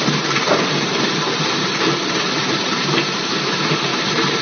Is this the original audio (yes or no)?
no